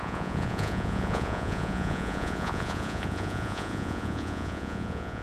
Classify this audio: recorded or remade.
remade